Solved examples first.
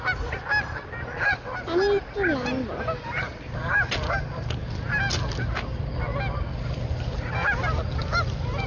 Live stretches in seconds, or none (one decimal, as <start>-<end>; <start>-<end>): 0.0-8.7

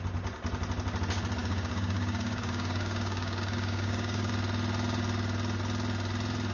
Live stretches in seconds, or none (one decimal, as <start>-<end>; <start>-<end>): 0.0-1.4; 4.3-6.5

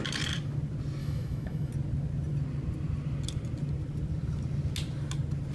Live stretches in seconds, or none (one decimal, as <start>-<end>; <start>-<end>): 0.0-1.0; 1.7-5.5

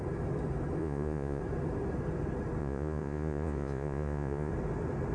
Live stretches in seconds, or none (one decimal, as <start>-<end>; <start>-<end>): 0.0-0.8; 1.4-2.6; 4.5-5.1

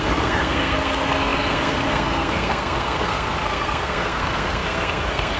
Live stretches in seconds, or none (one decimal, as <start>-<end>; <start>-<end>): none